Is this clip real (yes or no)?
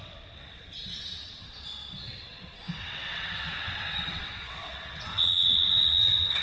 no